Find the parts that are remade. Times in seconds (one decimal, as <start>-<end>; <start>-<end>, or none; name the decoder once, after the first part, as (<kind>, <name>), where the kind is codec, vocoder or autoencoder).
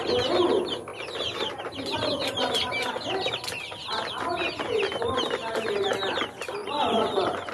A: 6.6-7.5 (vocoder, Vocos)